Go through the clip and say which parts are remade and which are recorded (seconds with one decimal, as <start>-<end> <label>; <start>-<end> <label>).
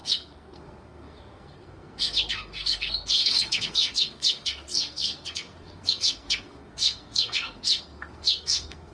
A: 0.0-8.9 remade